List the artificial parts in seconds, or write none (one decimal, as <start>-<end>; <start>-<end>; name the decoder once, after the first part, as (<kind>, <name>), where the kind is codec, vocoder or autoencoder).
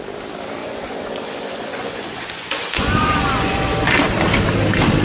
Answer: 0.6-3.6 (vocoder, Vocos)